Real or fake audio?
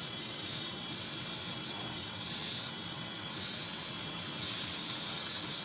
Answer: fake